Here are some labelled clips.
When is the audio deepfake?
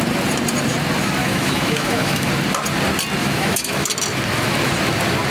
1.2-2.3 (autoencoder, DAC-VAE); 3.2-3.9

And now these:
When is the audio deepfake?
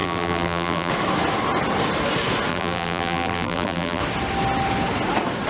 0.0-0.9 (vocoder, BigVGAN v2); 2.5-4.0